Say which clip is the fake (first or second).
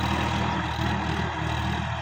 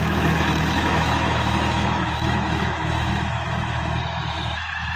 second